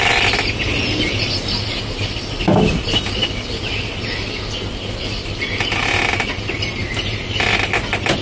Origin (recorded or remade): recorded